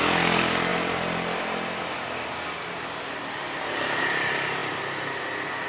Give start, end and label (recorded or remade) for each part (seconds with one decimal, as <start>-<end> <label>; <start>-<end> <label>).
0.0-0.7 recorded; 0.7-4.0 remade; 4.0-4.6 recorded; 4.6-5.2 remade; 5.2-5.7 recorded